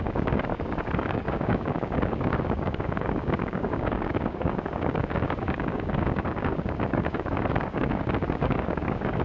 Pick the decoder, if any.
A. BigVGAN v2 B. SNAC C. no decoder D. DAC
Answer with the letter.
D